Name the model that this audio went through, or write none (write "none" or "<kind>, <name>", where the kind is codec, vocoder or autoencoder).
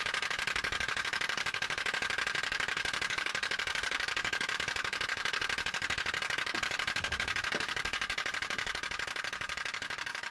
codec, DAC